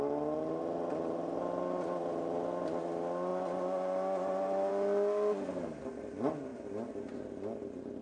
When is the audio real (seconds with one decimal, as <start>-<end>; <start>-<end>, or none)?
0.0-8.0